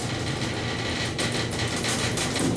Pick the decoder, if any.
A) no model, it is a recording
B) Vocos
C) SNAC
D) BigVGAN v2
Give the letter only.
A